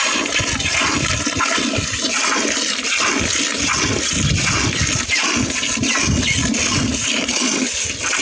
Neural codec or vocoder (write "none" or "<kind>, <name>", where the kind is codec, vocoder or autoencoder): none